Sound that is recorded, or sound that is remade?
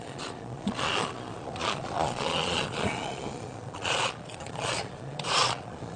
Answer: remade